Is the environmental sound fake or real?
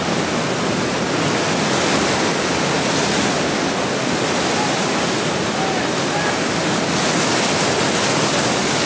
real